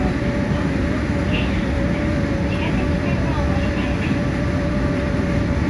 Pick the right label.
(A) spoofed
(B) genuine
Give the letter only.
B